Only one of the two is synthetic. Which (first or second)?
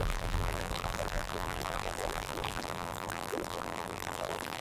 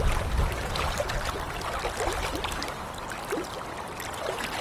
first